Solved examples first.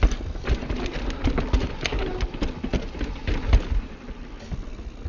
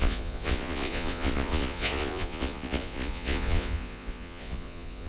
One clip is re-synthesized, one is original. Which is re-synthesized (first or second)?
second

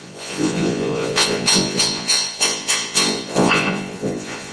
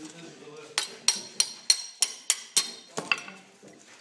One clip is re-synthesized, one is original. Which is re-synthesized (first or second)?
first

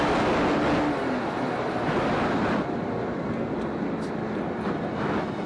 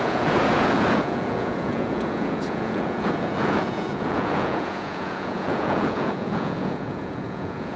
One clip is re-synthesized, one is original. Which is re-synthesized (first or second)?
second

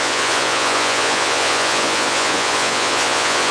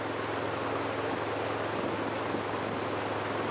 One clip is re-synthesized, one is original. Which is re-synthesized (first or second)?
first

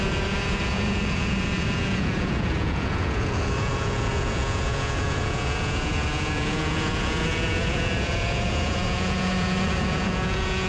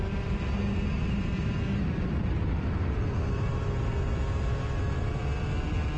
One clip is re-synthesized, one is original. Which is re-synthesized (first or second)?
first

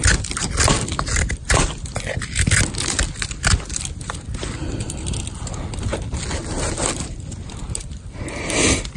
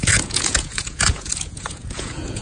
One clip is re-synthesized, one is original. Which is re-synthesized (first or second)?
second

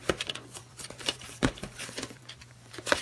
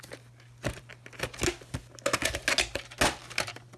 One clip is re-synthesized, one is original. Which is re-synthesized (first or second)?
first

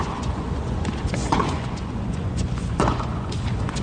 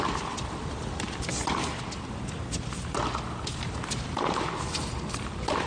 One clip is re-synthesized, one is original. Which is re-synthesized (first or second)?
first